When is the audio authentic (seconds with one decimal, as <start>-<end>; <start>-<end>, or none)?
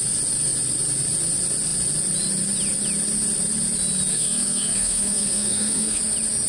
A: 0.0-4.1; 6.0-6.5